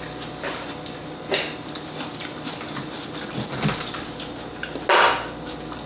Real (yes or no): yes